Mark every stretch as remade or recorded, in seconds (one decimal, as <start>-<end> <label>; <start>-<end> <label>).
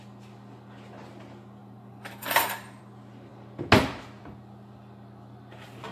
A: 0.0-1.6 recorded; 1.6-2.8 remade; 2.8-5.9 recorded